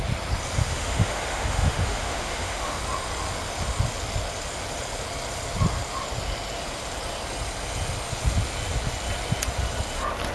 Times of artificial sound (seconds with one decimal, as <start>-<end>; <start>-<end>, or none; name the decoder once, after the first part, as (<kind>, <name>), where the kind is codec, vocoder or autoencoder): 0.6-2.8 (autoencoder, DAC-VAE)